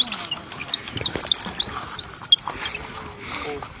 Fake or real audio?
real